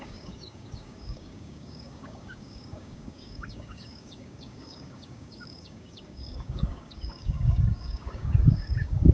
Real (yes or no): no